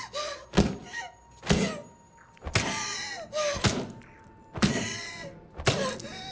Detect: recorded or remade recorded